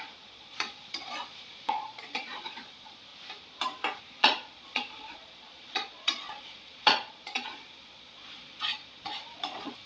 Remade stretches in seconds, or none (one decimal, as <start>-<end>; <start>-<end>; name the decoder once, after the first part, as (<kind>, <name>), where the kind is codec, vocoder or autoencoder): 0.0-3.1 (vocoder, Vocos); 4.0-9.9